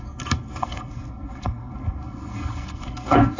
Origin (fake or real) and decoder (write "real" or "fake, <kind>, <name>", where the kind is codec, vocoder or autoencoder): fake, codec, SNAC